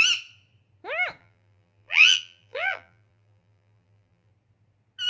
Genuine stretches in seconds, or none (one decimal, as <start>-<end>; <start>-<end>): 0.0-1.2; 4.3-5.1